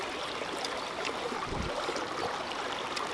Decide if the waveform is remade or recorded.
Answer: recorded